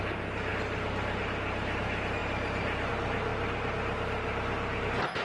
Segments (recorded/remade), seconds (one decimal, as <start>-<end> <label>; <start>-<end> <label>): 0.0-5.2 recorded